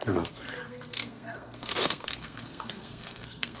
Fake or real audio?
fake